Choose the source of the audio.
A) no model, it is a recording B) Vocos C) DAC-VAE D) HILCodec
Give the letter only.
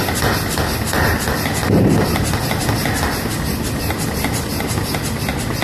A